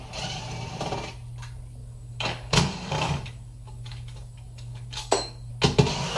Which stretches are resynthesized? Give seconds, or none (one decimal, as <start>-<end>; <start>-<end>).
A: 1.8-5.5